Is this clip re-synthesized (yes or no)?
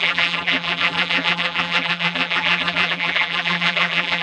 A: yes